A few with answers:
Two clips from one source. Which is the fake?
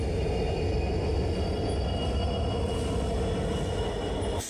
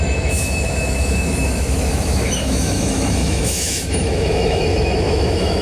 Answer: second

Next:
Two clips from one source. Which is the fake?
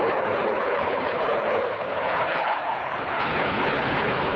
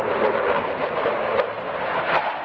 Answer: first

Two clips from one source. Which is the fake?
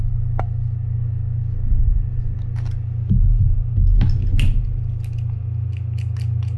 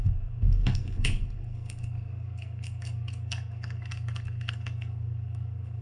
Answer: second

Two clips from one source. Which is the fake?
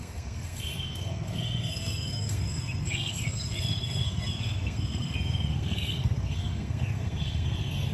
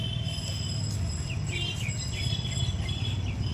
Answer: first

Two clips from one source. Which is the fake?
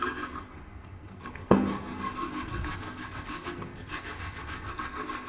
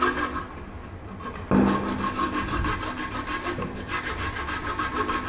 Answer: first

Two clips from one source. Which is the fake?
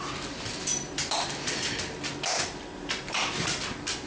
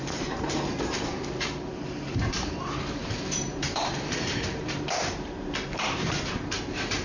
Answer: second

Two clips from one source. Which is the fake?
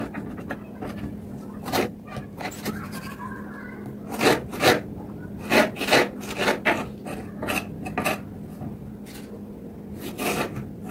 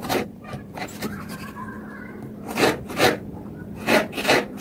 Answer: second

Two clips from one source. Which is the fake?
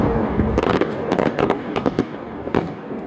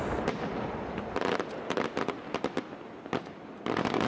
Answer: first